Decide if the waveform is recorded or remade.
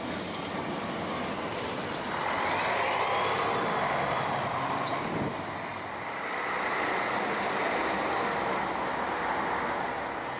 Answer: recorded